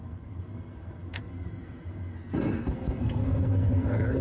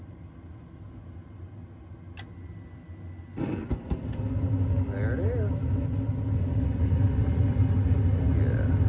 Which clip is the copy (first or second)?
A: first